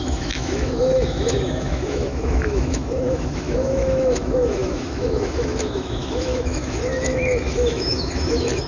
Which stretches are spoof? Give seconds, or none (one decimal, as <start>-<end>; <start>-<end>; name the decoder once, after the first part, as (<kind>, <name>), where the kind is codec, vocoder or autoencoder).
0.0-8.7 (autoencoder, DAC-VAE)